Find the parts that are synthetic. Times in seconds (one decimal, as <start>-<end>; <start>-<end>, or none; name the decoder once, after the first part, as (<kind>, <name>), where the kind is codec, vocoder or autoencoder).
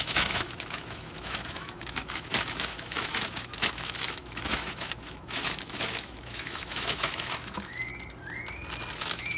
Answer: 0.0-7.9 (autoencoder, DAC-VAE); 9.0-9.4